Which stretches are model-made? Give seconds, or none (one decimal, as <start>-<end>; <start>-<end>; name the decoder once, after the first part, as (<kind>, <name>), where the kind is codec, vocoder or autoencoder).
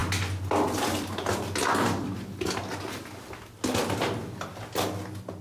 none